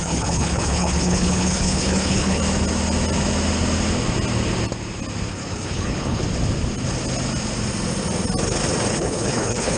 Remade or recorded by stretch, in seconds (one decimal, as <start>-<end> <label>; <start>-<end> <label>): 0.0-2.4 remade; 2.4-5.3 recorded; 5.3-6.2 remade; 6.2-8.9 recorded; 8.9-9.8 remade